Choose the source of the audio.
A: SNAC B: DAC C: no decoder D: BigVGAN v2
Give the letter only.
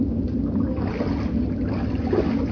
C